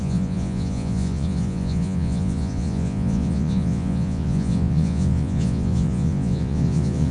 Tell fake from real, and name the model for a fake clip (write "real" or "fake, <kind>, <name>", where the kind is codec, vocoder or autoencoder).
fake, vocoder, Vocos